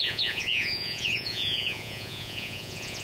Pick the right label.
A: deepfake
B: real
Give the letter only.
A